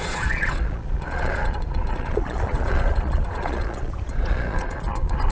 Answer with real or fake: fake